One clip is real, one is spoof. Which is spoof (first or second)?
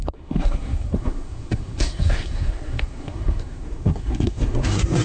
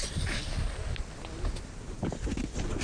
first